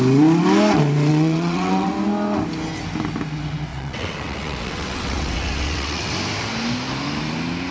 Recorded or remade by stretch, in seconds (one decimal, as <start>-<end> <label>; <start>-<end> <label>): 0.0-1.1 recorded; 1.1-1.9 remade; 1.9-3.7 recorded; 3.7-6.1 remade; 6.1-7.7 recorded